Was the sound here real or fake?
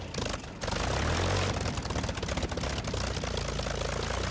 real